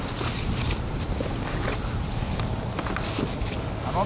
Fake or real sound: real